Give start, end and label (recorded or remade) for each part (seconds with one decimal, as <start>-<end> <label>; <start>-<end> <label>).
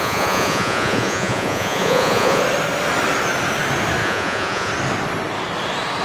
0.0-2.4 remade; 2.4-4.0 recorded; 4.0-4.7 remade; 4.7-6.0 recorded